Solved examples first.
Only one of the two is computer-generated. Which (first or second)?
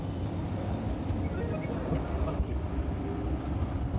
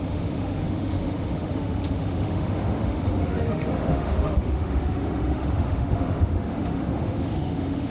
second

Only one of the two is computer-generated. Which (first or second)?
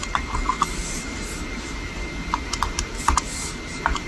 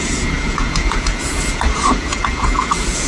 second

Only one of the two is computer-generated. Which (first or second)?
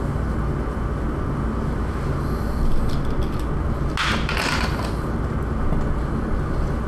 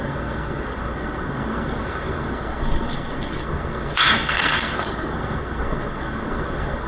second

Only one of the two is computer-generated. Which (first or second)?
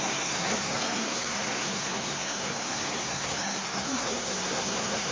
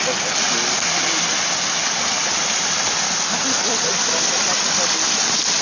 first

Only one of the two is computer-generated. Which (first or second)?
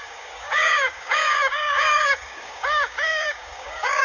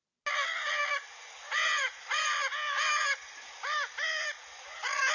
first